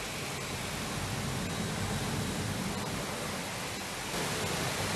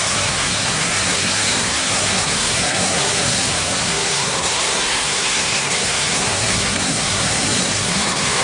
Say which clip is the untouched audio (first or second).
first